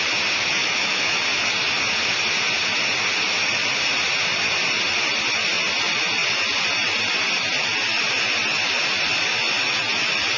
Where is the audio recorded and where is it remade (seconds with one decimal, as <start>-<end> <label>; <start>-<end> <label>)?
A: 0.0-0.6 recorded; 0.6-1.2 remade; 1.2-10.4 recorded